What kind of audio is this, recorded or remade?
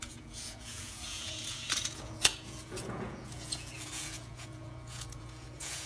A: remade